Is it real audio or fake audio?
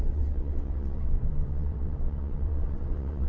fake